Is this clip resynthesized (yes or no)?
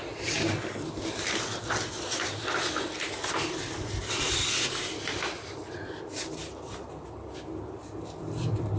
yes